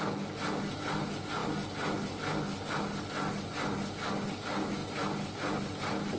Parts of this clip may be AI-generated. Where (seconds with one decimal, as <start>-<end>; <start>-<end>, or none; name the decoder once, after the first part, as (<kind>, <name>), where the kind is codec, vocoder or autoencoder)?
none